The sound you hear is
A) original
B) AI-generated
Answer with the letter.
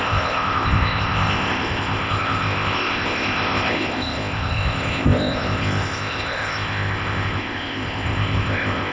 B